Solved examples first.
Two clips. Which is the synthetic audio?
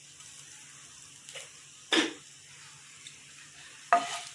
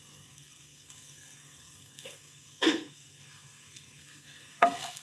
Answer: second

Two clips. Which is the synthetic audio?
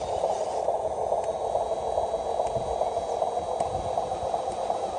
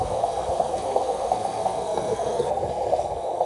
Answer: second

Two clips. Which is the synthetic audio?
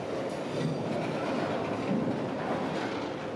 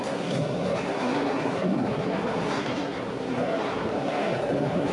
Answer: second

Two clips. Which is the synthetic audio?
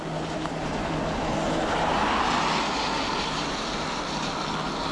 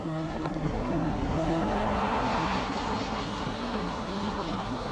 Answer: second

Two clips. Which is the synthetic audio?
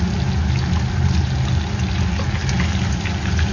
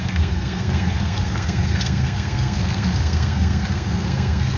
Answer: second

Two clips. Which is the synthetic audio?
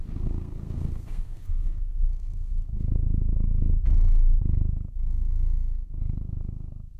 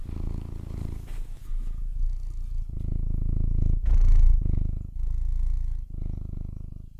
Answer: first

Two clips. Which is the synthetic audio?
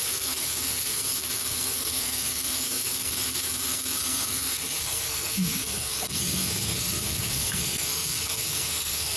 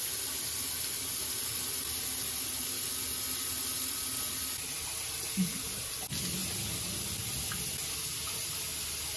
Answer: first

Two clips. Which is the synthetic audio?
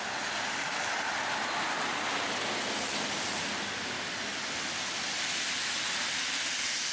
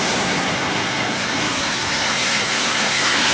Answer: second